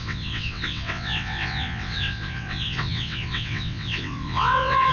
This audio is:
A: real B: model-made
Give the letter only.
B